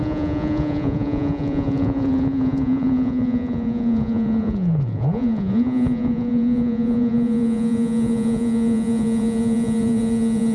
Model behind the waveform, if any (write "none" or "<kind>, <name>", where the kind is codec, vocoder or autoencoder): vocoder, Vocos